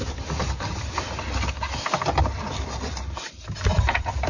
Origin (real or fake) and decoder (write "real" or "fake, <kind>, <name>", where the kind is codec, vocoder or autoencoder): real